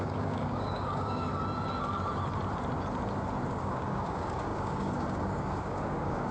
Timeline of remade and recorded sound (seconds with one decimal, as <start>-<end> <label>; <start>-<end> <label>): 0.0-1.3 remade; 1.3-3.5 recorded; 3.5-6.3 remade